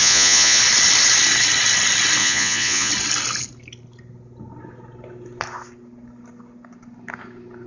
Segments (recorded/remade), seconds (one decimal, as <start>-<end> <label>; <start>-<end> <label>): 0.0-0.6 remade; 0.6-2.2 recorded; 2.2-2.9 remade; 2.9-7.7 recorded